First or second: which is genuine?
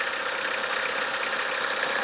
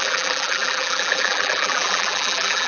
first